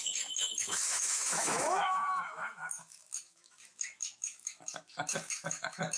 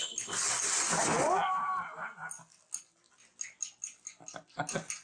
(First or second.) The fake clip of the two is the first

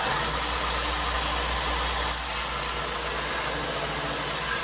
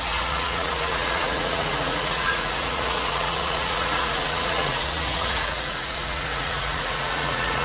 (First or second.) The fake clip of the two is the second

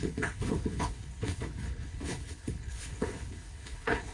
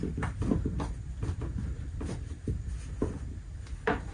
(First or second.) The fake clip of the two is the first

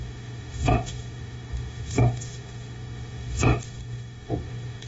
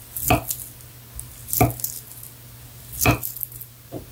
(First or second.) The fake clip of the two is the first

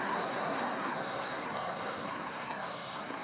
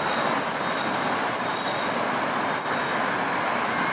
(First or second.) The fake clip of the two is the first